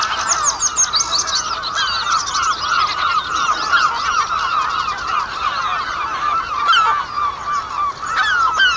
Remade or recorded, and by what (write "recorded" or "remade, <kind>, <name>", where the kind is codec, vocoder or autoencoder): recorded